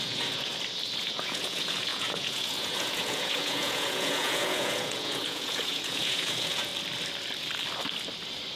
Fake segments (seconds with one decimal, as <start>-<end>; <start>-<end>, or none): 0.0-0.5; 1.0-6.7